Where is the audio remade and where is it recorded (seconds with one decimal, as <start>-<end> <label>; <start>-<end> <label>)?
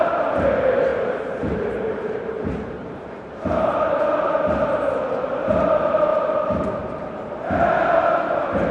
0.0-0.9 recorded; 0.9-4.9 remade; 4.9-6.1 recorded; 6.1-6.9 remade; 6.9-8.7 recorded